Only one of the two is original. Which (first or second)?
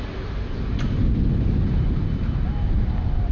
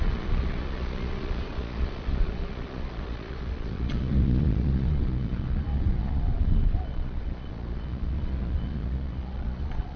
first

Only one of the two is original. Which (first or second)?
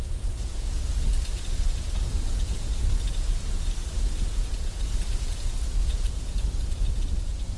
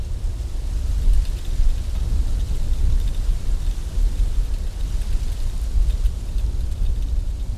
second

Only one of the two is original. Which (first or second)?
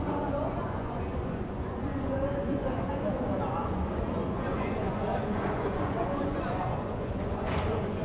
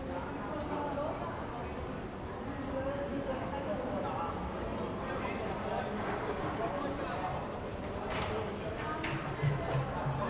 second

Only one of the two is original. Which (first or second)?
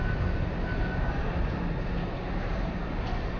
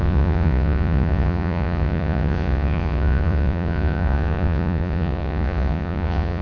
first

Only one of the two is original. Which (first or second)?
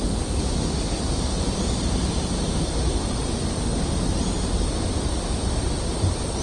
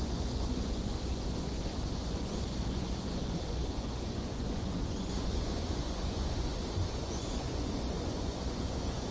first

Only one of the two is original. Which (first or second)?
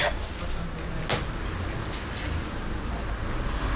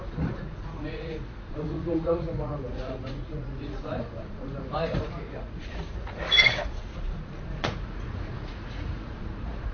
first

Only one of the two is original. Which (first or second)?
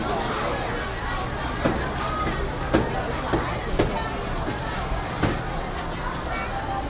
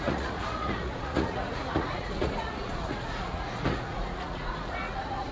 first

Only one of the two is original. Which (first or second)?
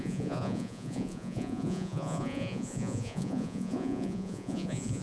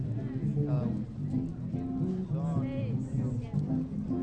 second